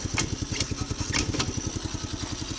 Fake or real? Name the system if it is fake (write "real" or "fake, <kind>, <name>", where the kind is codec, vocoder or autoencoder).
real